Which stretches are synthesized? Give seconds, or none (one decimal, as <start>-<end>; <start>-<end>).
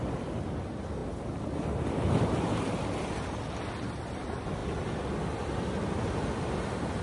none